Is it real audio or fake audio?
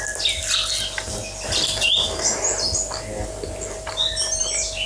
real